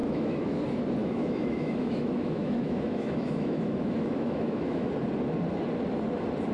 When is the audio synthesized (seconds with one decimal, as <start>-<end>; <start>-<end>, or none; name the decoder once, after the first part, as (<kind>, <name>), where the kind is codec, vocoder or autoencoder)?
0.0-0.6 (autoencoder, DAC-VAE); 1.0-4.9